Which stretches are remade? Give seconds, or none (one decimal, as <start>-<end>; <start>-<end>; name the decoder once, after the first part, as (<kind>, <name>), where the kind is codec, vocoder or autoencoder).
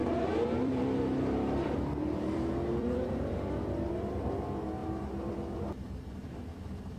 0.0-4.2 (vocoder, BigVGAN v2); 4.8-5.7